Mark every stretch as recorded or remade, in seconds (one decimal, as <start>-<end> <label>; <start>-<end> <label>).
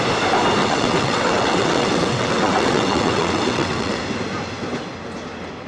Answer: 0.0-0.6 recorded; 0.6-4.0 remade; 4.0-5.7 recorded